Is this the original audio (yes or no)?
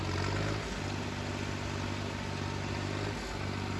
yes